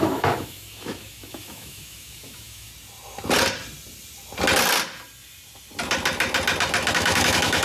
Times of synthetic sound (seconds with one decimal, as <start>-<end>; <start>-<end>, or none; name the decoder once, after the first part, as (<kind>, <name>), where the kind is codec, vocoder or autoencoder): 0.0-2.7 (autoencoder, DAC-VAE); 6.9-7.6